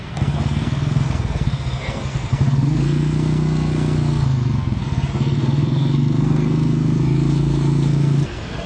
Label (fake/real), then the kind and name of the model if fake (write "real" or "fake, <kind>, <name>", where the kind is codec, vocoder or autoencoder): fake, codec, SNAC